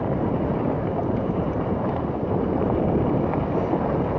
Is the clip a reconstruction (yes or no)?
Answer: yes